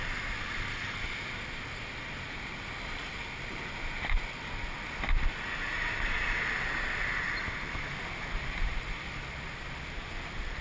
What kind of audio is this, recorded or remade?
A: recorded